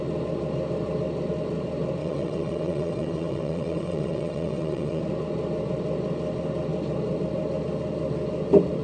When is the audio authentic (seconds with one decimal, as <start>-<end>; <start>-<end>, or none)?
0.0-2.0; 5.0-8.8